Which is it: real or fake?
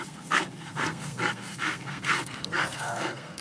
fake